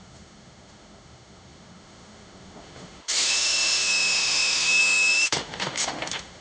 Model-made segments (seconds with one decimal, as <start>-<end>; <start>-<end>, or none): 0.0-6.4

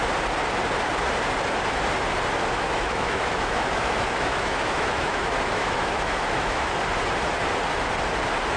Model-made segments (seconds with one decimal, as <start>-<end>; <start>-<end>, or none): 2.4-6.7

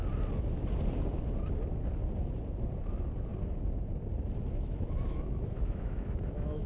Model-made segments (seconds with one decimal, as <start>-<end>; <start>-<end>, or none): 4.5-6.7

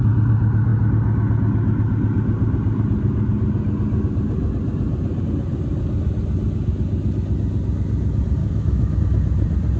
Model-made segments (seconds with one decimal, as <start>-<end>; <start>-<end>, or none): 8.4-9.0

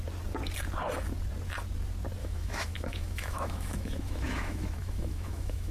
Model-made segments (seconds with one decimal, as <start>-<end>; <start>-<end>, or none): 2.2-5.7